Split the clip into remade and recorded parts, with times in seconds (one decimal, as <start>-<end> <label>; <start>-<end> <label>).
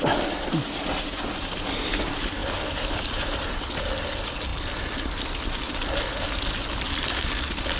0.0-7.8 recorded